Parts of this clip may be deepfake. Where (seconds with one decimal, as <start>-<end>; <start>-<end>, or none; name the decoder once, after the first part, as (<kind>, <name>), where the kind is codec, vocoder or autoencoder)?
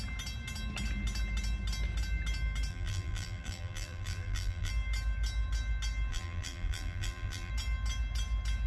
2.7-4.7 (vocoder, BigVGAN v2); 6.1-7.5